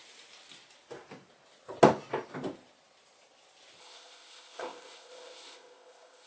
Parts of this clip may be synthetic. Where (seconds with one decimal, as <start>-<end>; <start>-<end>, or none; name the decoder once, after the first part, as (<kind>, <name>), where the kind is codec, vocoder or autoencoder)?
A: 3.8-6.3 (codec, ZipCodec)